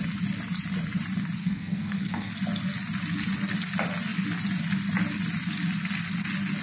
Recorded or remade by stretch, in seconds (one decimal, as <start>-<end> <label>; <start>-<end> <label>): 0.0-1.4 recorded; 1.4-2.3 remade; 2.3-6.6 recorded